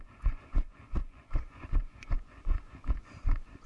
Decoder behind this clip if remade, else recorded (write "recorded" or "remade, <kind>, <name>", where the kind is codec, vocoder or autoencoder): remade, vocoder, Vocos